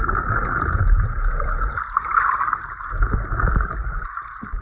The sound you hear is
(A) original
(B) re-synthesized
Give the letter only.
A